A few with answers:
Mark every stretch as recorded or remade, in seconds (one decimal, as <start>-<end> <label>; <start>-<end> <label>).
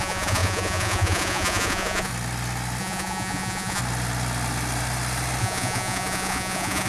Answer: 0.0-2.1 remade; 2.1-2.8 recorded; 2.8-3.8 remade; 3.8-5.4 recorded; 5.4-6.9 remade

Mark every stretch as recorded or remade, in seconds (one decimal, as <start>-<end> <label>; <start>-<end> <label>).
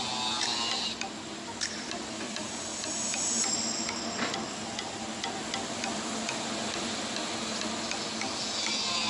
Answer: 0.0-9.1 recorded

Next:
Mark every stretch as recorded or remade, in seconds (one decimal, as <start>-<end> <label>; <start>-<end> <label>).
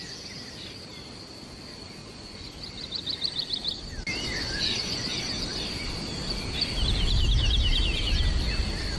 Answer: 0.0-2.0 recorded; 2.0-2.5 remade; 2.5-4.4 recorded; 4.4-5.2 remade; 5.2-9.0 recorded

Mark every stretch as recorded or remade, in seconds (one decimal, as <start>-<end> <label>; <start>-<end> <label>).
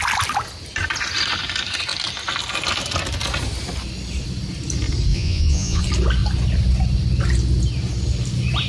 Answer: 0.0-5.1 recorded; 5.1-5.8 remade; 5.8-8.7 recorded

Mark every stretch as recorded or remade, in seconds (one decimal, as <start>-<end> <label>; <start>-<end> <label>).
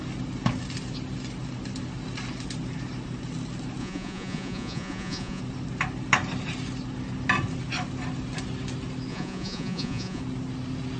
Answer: 0.0-3.8 recorded; 3.8-5.4 remade; 5.4-9.1 recorded; 9.1-10.2 remade; 10.2-11.0 recorded